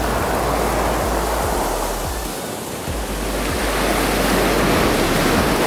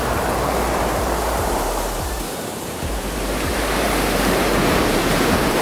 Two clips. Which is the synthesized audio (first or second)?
second